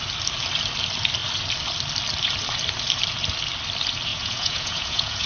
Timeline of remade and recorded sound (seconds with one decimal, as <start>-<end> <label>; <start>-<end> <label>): 0.0-4.1 recorded; 4.1-5.3 remade